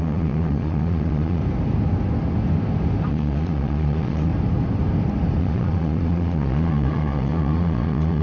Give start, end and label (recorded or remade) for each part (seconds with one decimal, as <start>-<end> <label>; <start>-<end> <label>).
0.0-1.4 remade; 1.4-3.1 recorded; 3.1-4.3 remade; 4.3-5.4 recorded; 5.4-8.2 remade